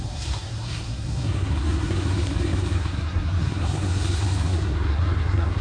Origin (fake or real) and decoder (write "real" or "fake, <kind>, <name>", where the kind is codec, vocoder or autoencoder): fake, codec, SNAC